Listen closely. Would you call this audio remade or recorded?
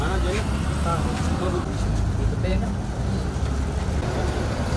recorded